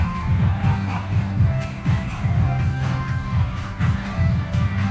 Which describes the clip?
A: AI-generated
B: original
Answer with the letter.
A